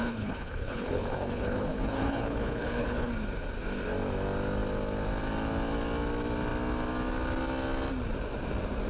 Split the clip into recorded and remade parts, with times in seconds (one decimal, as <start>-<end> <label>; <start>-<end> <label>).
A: 0.0-3.1 remade; 3.1-8.9 recorded